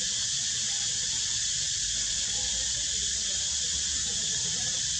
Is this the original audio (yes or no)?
no